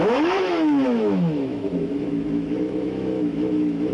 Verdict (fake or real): fake